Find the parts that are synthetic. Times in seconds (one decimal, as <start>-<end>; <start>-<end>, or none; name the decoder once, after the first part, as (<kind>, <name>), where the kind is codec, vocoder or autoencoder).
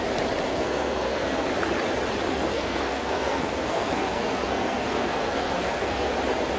0.5-1.5 (codec, SNAC); 2.3-6.1